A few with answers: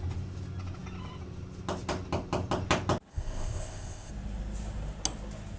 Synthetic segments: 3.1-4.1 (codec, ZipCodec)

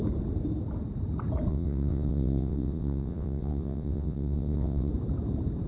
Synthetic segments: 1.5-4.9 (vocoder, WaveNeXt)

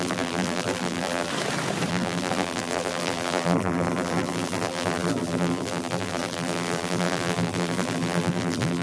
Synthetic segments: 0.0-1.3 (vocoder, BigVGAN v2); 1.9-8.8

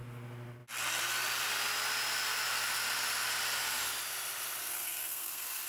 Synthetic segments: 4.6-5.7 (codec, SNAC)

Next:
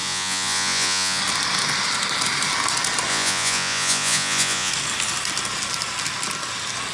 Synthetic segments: 0.0-1.2 (vocoder, Vocos); 3.1-4.7

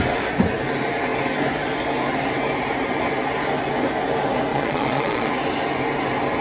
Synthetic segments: 4.5-5.3 (vocoder, Vocos)

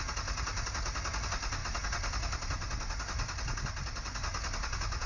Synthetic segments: none

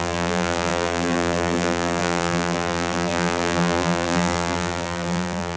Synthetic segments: 0.0-5.6 (vocoder, BigVGAN v2)